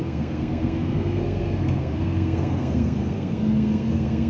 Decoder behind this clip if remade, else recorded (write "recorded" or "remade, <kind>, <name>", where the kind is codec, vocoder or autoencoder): remade, codec, SNAC